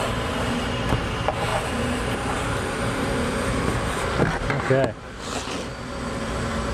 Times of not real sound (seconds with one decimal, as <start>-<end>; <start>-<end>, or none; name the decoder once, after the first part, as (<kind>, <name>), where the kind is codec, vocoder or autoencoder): 1.5-4.5 (vocoder, BigVGAN v2)